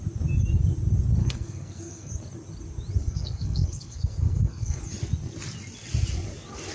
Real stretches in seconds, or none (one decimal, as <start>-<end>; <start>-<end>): 0.0-1.2; 2.1-3.0; 4.8-6.7